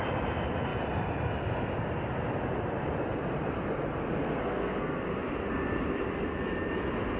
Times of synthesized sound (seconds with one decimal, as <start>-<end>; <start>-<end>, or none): 4.2-5.0